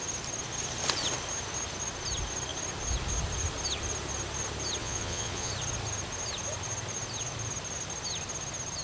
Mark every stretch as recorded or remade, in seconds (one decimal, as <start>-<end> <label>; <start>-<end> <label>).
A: 0.0-4.8 recorded; 4.8-5.5 remade; 5.5-8.8 recorded